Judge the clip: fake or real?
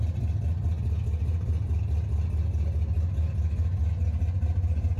real